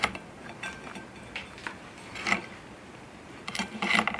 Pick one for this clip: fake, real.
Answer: real